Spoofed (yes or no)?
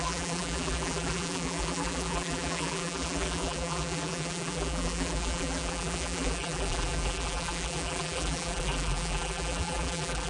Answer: yes